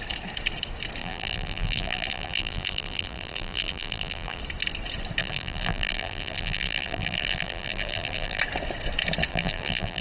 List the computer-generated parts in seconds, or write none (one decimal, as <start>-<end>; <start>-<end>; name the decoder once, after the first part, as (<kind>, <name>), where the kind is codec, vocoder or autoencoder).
1.0-4.4 (vocoder, BigVGAN v2); 5.2-8.4; 9.3-10.0